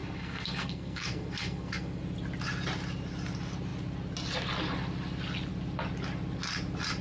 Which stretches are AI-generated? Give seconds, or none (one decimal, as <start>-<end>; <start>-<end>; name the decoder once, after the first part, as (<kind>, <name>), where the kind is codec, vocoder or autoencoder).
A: 0.0-2.0 (codec, SNAC)